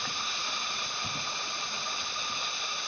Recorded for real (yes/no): yes